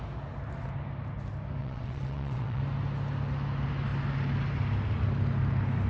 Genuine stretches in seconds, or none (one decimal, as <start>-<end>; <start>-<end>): 0.0-1.6; 2.6-5.9